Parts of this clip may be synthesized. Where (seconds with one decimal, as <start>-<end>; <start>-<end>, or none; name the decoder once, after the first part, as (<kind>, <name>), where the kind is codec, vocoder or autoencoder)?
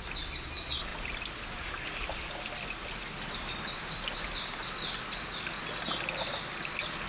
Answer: none